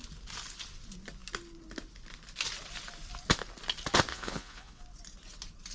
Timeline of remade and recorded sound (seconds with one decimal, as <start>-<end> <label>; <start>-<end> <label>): 0.0-4.1 recorded; 4.1-4.8 remade; 4.8-5.7 recorded